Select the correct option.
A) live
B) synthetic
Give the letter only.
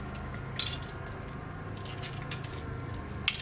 A